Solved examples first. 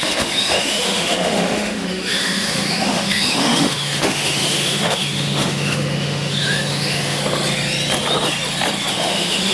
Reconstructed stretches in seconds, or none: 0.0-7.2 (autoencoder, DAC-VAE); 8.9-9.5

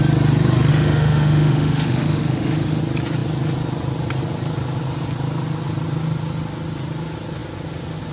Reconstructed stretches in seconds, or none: 0.7-2.8 (autoencoder, DAC-VAE)